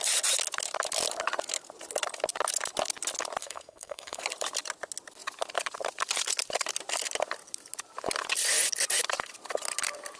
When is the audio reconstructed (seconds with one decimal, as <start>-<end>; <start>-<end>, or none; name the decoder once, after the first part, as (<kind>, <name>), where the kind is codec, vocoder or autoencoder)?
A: 3.4-4.2 (codec, SNAC)